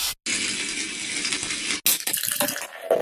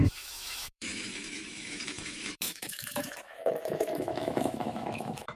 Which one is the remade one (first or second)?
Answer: second